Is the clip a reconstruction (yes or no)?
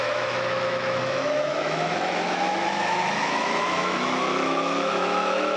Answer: yes